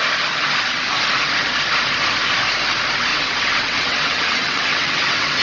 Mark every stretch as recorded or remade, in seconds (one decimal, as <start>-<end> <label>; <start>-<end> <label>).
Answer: 0.0-3.1 recorded; 3.1-5.4 remade